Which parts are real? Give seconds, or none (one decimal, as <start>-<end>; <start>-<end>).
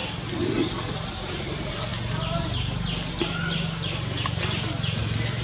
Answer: 0.0-5.4